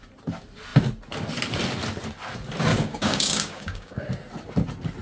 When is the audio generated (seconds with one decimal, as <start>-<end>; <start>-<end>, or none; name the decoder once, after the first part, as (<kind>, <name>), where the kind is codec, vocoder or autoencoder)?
2.7-4.0 (codec, DAC)